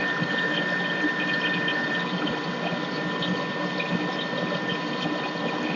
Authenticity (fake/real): real